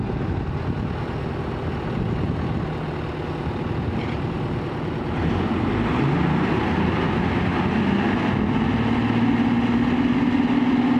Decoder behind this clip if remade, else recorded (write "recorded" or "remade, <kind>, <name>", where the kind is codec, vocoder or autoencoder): recorded